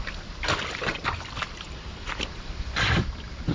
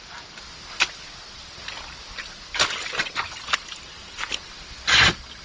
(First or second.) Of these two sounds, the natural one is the second